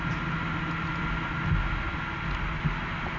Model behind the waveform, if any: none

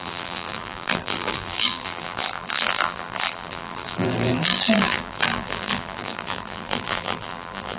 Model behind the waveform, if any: vocoder, BigVGAN v2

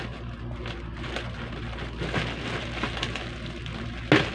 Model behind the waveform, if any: none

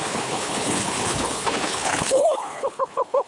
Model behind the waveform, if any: codec, HILCodec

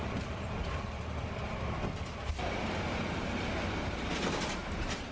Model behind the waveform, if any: none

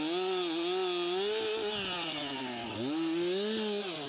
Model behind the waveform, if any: none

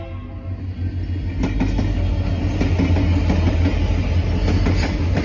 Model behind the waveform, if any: none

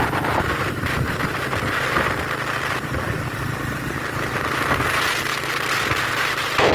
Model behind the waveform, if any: none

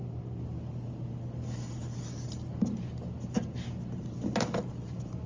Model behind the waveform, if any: none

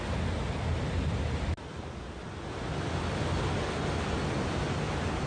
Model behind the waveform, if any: none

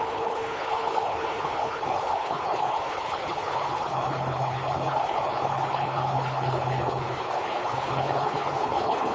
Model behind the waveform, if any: codec, HILCodec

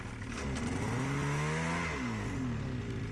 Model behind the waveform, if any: none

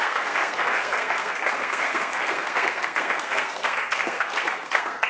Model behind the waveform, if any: codec, SNAC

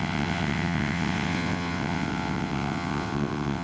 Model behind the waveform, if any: vocoder, WaveNeXt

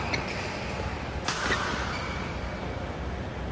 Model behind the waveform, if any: none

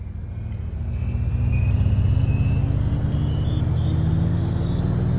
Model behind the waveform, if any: none